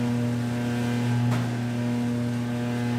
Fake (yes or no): no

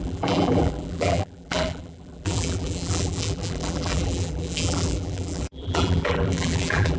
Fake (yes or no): yes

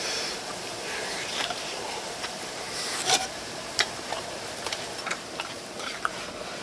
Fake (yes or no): yes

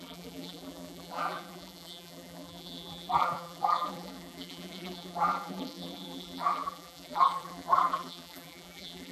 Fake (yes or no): yes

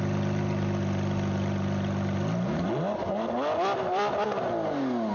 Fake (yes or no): no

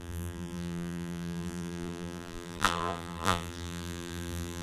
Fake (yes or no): yes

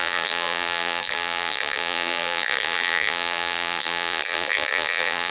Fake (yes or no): yes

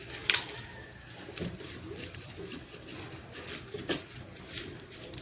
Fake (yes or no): yes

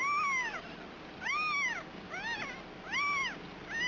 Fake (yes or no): no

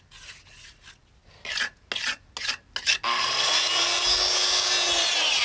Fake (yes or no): no